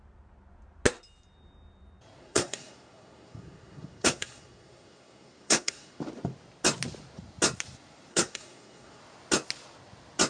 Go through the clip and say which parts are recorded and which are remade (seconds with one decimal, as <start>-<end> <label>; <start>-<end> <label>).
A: 0.0-2.2 recorded; 2.2-6.0 remade; 6.0-8.1 recorded; 8.1-9.0 remade; 9.0-10.3 recorded